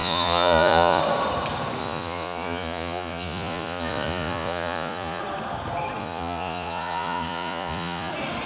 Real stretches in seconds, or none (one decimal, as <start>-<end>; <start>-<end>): 1.0-1.8; 5.2-6.0; 8.1-8.5